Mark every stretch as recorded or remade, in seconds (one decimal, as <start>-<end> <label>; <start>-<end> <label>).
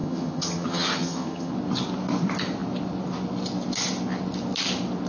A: 0.0-1.5 remade; 1.5-5.1 recorded